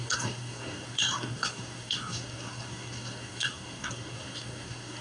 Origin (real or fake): fake